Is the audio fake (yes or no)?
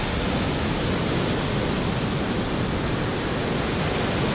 no